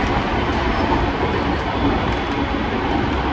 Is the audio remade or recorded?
recorded